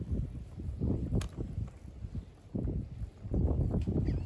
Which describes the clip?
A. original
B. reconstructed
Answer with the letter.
A